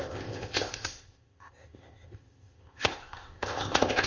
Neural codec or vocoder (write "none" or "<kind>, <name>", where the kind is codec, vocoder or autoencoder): codec, ZipCodec